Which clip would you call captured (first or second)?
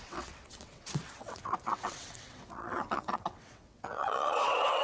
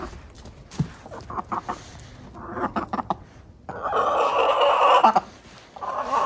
second